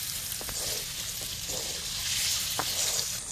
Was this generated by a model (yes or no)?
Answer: no